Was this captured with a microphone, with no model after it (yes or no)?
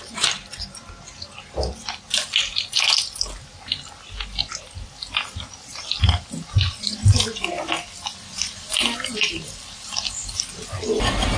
yes